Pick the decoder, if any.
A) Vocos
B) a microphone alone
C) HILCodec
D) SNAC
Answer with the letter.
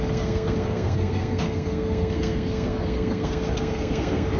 D